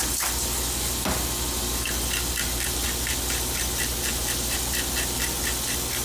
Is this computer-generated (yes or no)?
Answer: no